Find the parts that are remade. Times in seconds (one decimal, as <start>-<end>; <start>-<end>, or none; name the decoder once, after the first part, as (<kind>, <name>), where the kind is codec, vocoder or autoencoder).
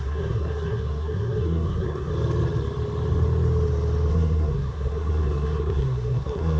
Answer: 0.0-2.1 (codec, SNAC); 4.1-6.6